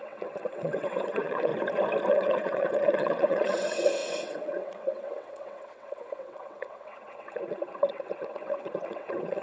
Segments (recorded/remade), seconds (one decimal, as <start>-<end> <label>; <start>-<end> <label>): 0.0-1.5 remade; 1.5-2.1 recorded; 2.1-9.4 remade